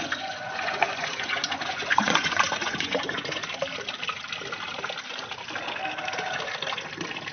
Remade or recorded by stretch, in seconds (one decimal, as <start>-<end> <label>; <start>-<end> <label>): 0.0-3.4 remade; 3.4-7.3 recorded